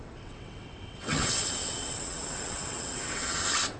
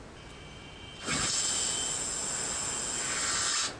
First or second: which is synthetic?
first